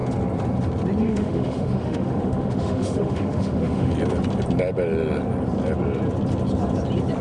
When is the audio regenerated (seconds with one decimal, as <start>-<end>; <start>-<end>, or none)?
1.0-3.9